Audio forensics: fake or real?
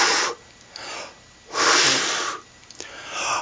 real